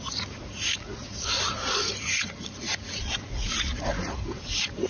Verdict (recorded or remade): remade